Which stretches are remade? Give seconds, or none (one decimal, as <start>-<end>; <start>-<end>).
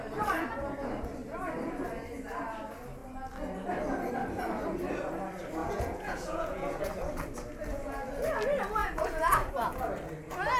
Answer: 5.6-6.8; 8.8-9.5